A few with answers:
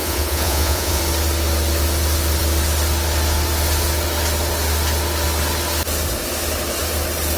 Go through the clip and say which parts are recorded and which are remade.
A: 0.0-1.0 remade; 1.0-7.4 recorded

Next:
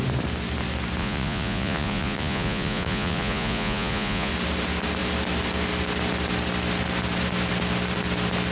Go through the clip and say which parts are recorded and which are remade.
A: 0.0-1.0 recorded; 1.0-4.3 remade; 4.3-8.5 recorded